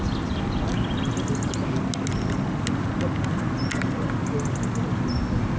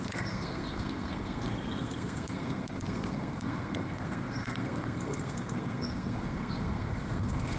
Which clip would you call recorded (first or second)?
first